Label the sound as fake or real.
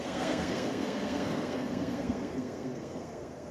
fake